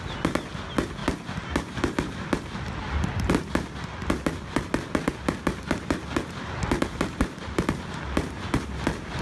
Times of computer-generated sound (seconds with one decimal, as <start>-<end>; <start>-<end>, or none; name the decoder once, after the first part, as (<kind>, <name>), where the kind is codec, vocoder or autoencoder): none